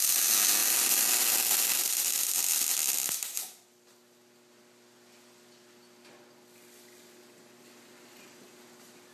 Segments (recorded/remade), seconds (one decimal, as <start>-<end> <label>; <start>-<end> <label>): 0.0-9.1 recorded